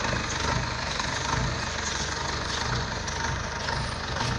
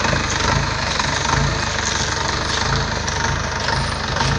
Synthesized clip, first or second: first